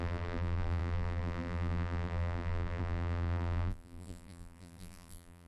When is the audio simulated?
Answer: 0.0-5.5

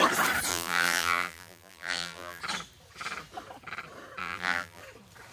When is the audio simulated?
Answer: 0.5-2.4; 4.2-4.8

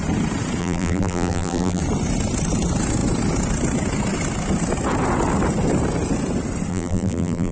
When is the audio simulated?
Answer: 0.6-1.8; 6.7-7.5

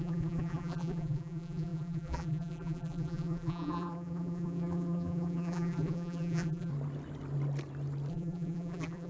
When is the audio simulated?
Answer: 0.0-6.7; 8.1-9.1

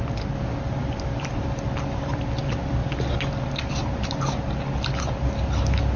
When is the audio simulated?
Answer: 0.8-2.2

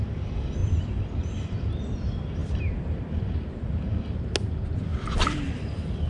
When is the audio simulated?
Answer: 0.6-1.3; 4.9-5.5